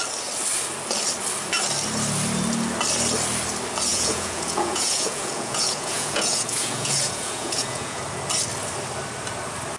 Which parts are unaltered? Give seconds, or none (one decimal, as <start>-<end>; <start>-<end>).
0.0-3.9; 8.0-9.8